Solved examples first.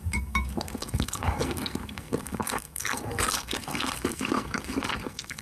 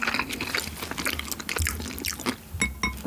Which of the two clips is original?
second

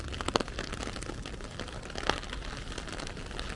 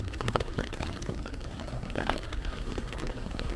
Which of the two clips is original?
first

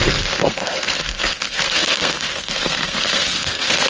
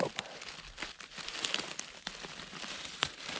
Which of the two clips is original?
second